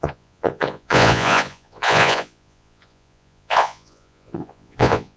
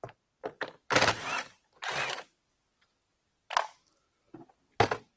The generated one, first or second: first